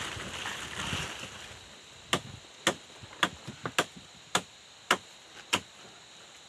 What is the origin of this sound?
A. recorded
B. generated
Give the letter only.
A